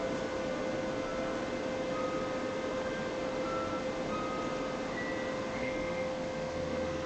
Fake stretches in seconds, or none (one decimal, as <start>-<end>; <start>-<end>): 5.6-7.1